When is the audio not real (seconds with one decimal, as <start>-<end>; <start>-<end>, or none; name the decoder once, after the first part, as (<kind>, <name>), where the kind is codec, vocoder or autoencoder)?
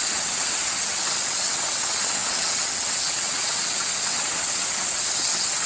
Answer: 0.0-5.7 (vocoder, WaveNeXt)